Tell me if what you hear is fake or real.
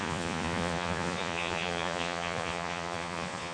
fake